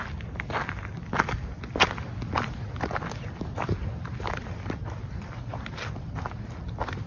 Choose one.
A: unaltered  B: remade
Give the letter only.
A